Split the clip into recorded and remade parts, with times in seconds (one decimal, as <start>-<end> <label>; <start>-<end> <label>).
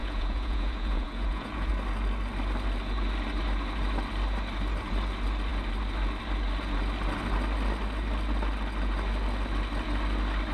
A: 0.0-1.7 remade; 1.7-10.5 recorded